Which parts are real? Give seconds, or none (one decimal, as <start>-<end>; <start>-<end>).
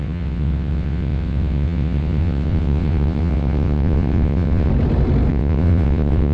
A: 4.7-5.3